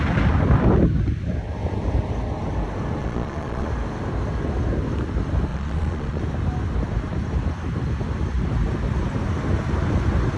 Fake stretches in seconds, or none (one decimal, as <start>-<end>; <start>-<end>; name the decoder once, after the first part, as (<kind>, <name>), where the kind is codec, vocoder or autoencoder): 3.0-3.7 (vocoder, Vocos); 5.5-6.2